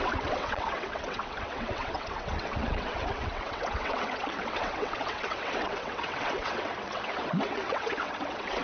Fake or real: fake